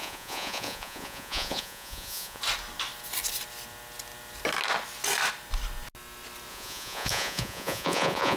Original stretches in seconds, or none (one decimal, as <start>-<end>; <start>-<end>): 2.4-6.5